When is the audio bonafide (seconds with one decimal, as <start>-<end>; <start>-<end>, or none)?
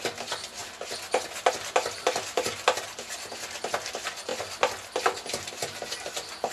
0.0-6.5